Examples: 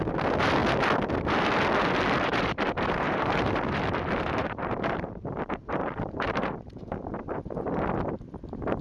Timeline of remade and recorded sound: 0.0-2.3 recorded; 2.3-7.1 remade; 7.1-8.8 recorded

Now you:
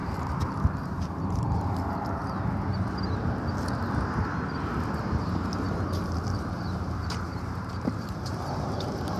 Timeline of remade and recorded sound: 0.0-2.2 remade; 2.2-5.2 recorded; 5.2-9.2 remade

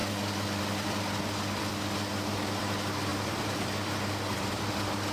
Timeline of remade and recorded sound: 0.0-0.6 recorded; 0.6-1.7 remade; 1.7-2.6 recorded; 2.6-5.1 remade